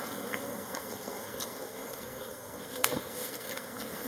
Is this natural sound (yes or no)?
no